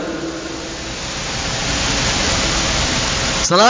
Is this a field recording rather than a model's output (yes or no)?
yes